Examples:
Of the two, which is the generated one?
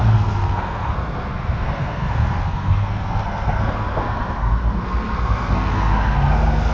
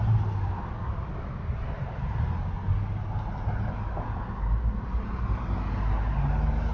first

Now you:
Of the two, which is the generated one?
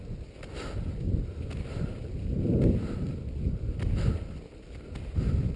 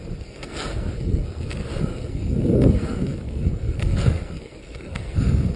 second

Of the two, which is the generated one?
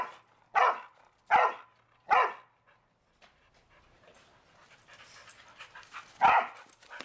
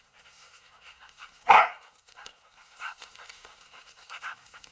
second